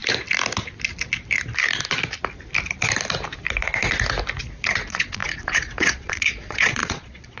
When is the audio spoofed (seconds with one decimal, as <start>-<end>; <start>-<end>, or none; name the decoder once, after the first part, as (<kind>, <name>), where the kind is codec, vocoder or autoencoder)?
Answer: 4.4-7.4 (vocoder, Vocos)